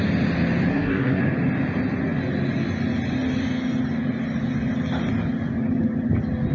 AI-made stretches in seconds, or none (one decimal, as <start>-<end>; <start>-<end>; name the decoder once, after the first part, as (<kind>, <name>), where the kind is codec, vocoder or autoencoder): 0.7-1.2 (codec, SNAC)